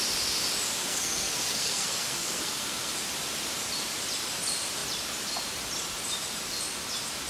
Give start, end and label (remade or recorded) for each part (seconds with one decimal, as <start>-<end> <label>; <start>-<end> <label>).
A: 0.0-0.8 recorded; 0.8-2.9 remade; 2.9-7.3 recorded